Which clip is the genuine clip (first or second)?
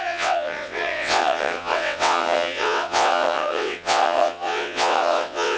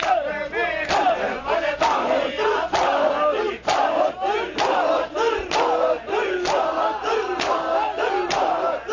second